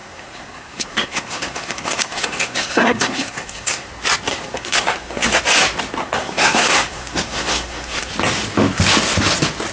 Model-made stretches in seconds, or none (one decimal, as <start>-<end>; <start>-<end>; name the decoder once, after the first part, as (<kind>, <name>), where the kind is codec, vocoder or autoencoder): 0.0-3.9 (codec, SNAC); 4.3-5.4; 6.0-8.1